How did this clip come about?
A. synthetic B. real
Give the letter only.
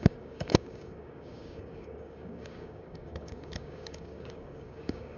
A